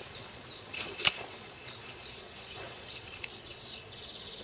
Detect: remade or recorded remade